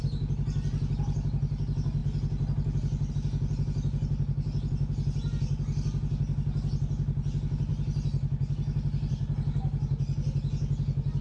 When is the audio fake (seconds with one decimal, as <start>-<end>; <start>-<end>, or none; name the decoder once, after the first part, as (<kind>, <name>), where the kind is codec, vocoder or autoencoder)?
none